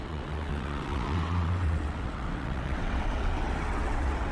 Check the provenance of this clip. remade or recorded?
remade